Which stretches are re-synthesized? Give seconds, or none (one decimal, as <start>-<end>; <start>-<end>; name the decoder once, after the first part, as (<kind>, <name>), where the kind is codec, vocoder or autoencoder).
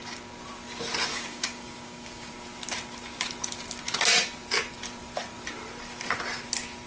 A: 1.1-2.3 (codec, DAC)